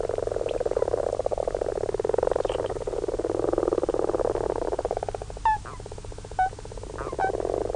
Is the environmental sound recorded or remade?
recorded